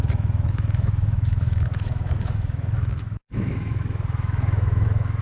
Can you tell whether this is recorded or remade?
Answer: remade